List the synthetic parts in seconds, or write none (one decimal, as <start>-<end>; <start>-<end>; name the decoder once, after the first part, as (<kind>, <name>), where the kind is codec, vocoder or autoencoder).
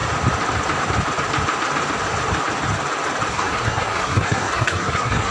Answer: 3.3-5.3 (codec, SNAC)